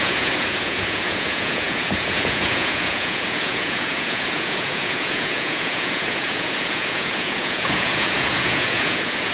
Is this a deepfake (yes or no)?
yes